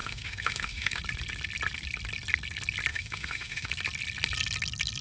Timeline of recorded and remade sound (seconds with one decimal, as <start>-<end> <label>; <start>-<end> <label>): 0.0-1.0 remade; 1.0-2.9 recorded; 2.9-3.7 remade; 3.7-5.0 recorded